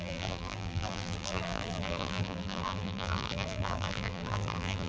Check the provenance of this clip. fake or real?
fake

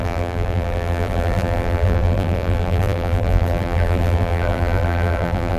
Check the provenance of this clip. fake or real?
fake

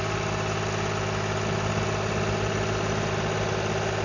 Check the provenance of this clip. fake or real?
real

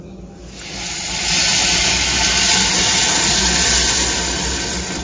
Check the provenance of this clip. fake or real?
real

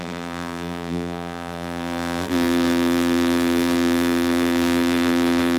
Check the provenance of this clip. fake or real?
fake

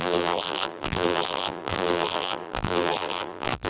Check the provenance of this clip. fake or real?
fake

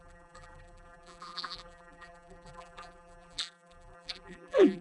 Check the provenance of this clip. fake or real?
fake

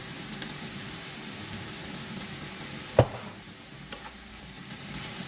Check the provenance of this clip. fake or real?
fake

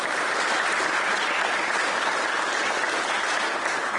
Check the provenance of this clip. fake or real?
real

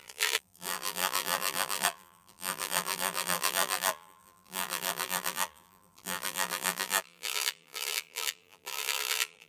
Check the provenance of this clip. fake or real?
fake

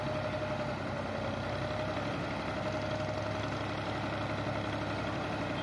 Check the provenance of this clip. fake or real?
real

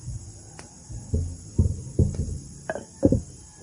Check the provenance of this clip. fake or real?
real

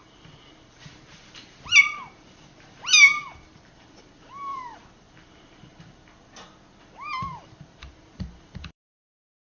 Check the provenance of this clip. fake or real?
fake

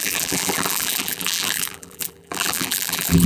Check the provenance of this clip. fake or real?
fake